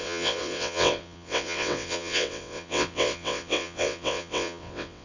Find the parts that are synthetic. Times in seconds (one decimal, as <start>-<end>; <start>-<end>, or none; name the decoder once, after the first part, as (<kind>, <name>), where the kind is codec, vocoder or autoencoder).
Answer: 0.0-5.0 (vocoder, WaveNeXt)